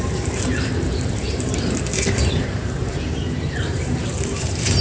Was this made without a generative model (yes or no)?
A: no